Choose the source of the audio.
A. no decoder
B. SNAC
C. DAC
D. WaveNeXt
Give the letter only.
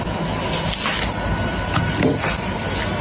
A